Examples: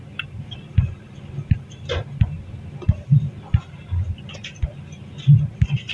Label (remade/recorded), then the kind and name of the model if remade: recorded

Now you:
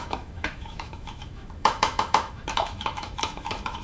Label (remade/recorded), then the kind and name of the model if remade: remade, autoencoder, DAC-VAE